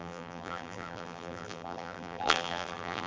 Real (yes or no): no